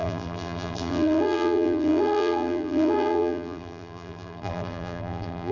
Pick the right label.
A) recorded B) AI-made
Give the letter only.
B